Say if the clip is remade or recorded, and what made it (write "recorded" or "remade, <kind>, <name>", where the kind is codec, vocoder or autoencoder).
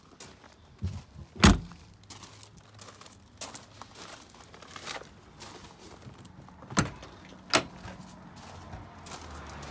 recorded